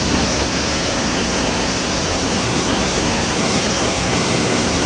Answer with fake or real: fake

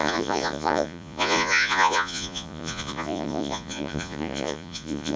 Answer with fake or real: fake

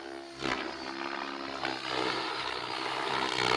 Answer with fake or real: real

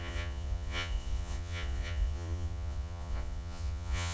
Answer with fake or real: fake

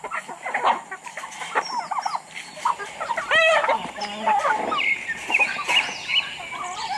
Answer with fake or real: real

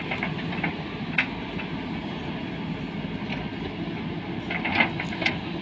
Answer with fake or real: real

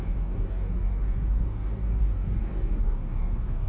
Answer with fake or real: fake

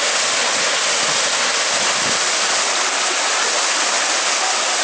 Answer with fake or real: real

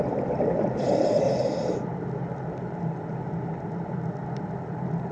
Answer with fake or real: real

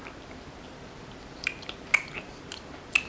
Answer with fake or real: real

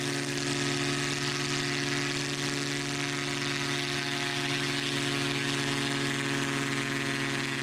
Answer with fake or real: real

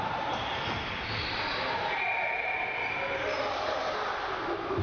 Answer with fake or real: real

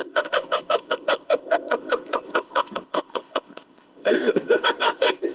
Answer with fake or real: fake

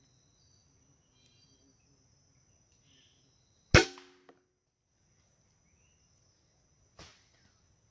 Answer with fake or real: real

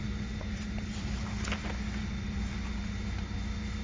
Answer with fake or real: real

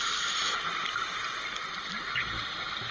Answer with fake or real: real